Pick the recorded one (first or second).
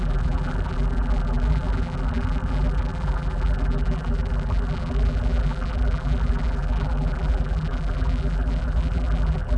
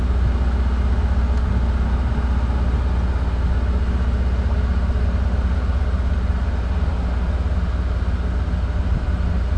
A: second